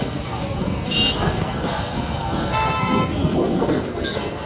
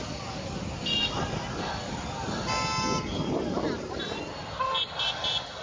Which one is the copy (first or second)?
first